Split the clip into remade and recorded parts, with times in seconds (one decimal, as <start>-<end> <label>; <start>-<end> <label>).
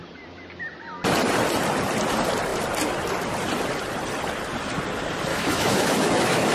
0.0-5.3 recorded; 5.3-6.5 remade